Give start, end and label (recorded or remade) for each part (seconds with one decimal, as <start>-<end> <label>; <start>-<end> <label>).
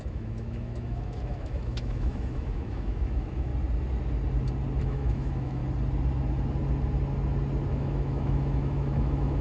0.0-3.5 remade; 3.5-4.8 recorded; 4.8-5.6 remade; 5.6-7.7 recorded; 7.7-9.4 remade